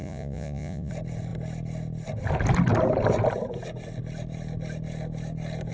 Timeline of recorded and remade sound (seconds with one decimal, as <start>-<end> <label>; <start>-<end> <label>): 0.0-0.9 remade; 0.9-5.7 recorded